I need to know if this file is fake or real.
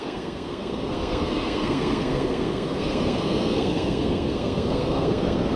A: fake